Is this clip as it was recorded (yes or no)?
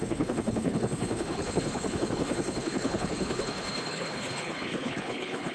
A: no